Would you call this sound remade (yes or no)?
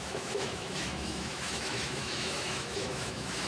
yes